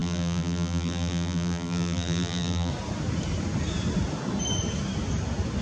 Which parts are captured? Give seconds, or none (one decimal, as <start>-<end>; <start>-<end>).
2.7-5.6